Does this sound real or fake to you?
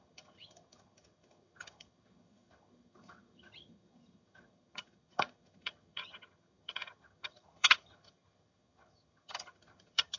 fake